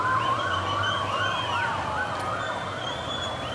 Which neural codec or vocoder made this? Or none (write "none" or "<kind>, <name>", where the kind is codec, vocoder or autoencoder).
none